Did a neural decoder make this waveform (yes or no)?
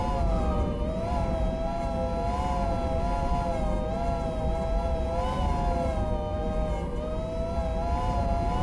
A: no